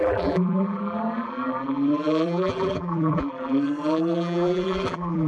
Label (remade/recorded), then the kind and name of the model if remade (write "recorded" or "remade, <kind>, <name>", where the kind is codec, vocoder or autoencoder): remade, vocoder, BigVGAN v2